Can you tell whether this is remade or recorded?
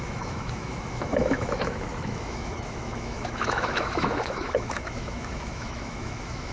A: remade